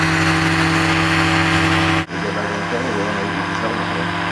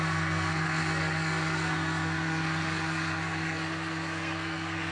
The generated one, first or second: second